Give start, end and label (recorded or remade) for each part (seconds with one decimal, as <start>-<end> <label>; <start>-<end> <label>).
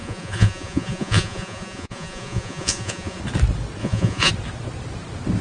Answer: 0.0-3.2 remade; 3.2-3.8 recorded; 3.8-4.3 remade; 4.3-5.4 recorded